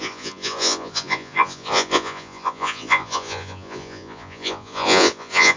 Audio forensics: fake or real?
fake